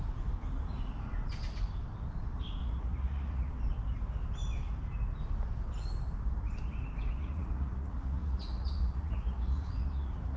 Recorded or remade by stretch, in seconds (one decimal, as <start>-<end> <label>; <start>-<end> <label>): 0.0-2.6 recorded; 2.6-3.5 remade; 3.5-7.2 recorded; 7.2-10.4 remade